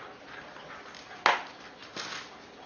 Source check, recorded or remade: recorded